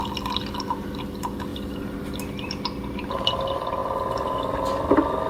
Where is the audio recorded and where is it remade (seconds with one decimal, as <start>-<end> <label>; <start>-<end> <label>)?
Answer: 0.0-5.3 recorded